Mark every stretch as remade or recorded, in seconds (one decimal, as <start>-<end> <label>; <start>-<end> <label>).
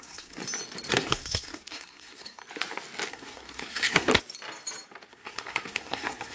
0.0-0.4 remade; 0.4-0.9 recorded; 0.9-2.4 remade; 2.4-3.1 recorded; 3.1-4.1 remade; 4.1-5.1 recorded; 5.1-6.3 remade